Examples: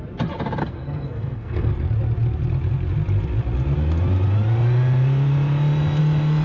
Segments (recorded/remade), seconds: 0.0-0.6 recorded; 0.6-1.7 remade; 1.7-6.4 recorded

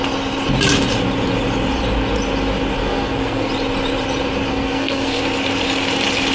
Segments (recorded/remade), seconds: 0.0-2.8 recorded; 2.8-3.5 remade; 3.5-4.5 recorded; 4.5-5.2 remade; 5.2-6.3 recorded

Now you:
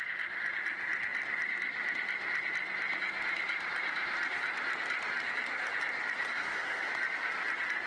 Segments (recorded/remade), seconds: 0.0-6.3 recorded; 6.3-6.9 remade; 6.9-7.9 recorded

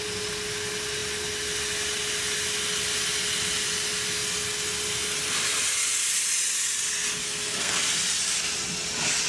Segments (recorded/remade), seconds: 0.0-7.2 recorded; 7.2-7.8 remade; 7.8-9.3 recorded